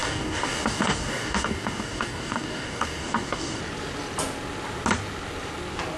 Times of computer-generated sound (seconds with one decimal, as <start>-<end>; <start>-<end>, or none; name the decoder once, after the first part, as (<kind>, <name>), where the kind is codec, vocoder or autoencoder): 0.0-3.6 (codec, DAC)